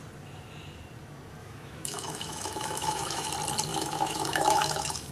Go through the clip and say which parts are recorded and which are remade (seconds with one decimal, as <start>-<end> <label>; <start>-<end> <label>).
0.0-1.4 recorded; 1.4-3.3 remade; 3.3-3.7 recorded; 3.7-5.1 remade